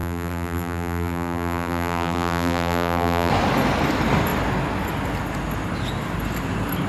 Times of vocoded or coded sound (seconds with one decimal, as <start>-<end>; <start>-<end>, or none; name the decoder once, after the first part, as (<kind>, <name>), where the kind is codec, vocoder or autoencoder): 0.0-3.3 (vocoder, BigVGAN v2)